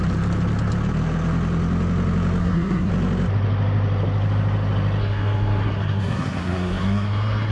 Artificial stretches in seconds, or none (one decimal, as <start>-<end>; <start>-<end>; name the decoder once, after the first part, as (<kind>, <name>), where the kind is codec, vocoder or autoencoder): 2.4-2.9 (codec, SNAC); 5.0-7.5